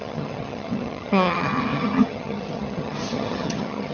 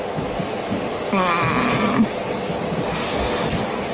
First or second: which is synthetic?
first